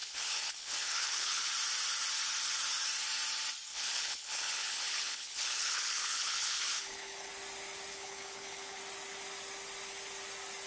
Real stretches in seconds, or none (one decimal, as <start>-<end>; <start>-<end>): 1.5-3.7; 7.3-7.9; 8.8-10.7